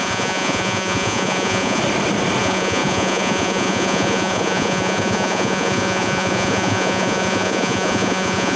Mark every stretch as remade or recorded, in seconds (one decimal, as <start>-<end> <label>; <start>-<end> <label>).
0.0-1.8 remade; 1.8-2.4 recorded; 2.4-8.6 remade